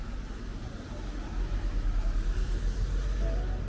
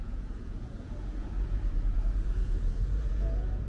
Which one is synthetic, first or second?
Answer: second